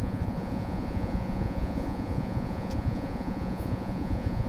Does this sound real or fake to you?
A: fake